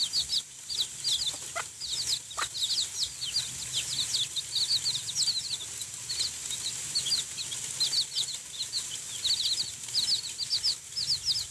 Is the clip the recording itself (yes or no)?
yes